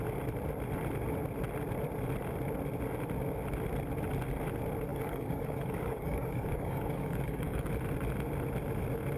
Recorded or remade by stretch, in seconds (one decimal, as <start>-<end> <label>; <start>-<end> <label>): 0.0-4.9 recorded; 4.9-7.7 remade; 7.7-9.2 recorded